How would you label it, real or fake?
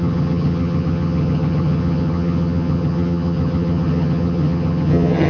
fake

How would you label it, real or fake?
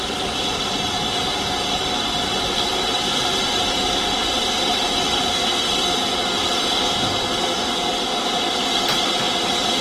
real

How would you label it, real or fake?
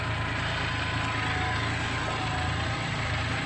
real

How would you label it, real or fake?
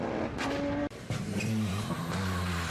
real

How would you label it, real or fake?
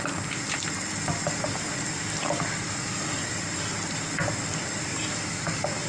fake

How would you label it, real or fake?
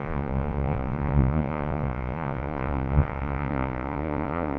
fake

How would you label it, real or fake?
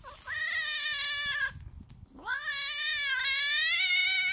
real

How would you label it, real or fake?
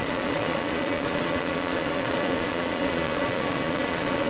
fake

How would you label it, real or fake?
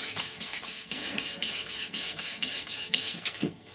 fake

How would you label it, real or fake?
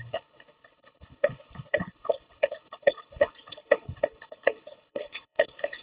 fake